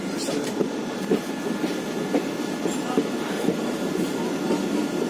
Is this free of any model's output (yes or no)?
yes